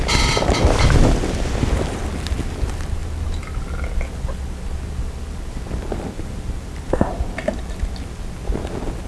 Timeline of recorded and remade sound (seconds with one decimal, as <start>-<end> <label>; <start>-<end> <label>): 0.0-9.1 recorded